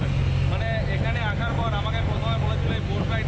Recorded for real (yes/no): yes